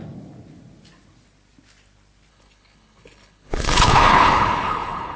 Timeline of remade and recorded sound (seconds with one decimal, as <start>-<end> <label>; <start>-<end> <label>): 0.0-2.3 recorded; 2.3-5.2 remade